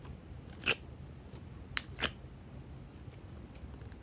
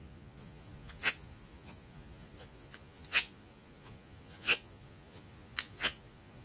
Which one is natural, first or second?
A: first